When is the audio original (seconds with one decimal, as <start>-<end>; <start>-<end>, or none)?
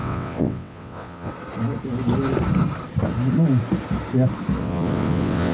1.3-4.6